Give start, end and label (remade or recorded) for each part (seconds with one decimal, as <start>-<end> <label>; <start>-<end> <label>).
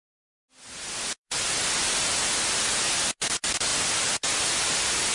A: 0.0-5.1 recorded